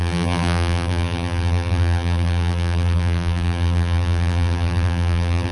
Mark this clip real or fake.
fake